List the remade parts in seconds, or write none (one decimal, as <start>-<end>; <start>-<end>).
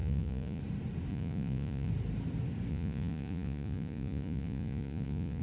0.0-0.6; 1.1-1.9; 2.7-5.4